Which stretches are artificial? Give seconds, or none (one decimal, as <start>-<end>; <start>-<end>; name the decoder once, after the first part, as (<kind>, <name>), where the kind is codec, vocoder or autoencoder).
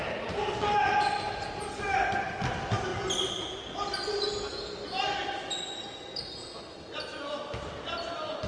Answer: none